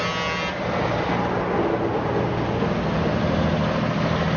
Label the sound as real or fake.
real